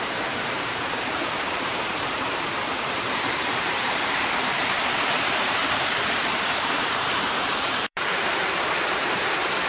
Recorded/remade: remade